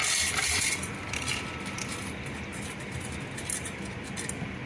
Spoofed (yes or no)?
no